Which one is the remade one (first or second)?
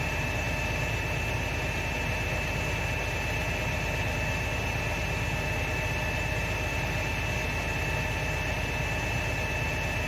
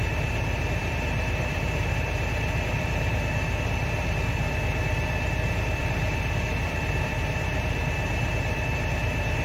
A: second